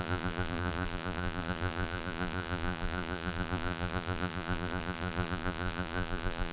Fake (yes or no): yes